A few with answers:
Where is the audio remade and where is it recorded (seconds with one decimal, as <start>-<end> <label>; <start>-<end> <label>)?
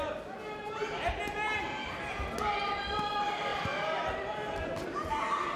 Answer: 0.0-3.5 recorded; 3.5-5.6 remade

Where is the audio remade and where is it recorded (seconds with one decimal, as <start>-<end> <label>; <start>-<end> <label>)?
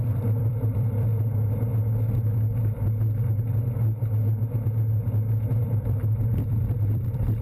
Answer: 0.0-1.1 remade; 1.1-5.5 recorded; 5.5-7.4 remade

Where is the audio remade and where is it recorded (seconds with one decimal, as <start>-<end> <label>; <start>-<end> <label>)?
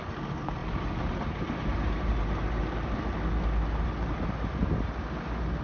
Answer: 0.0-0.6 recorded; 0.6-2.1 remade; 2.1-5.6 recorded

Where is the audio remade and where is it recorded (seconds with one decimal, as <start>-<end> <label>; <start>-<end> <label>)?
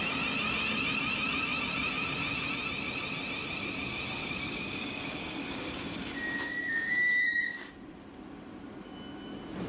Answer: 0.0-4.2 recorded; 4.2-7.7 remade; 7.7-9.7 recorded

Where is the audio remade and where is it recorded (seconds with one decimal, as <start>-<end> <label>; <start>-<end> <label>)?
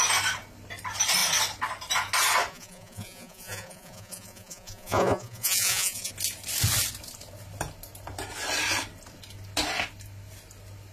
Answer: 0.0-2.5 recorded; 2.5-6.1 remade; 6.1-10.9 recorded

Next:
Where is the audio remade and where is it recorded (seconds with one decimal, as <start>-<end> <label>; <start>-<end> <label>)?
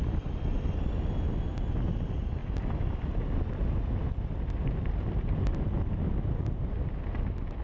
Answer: 0.0-7.6 recorded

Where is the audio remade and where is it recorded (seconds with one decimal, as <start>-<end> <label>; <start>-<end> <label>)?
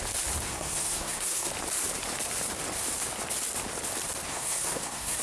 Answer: 0.0-0.5 recorded; 0.5-1.5 remade; 1.5-4.3 recorded; 4.3-5.2 remade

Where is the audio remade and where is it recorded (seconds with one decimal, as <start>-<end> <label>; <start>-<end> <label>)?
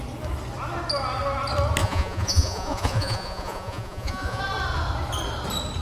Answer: 0.0-1.8 recorded; 1.8-4.4 remade; 4.4-5.8 recorded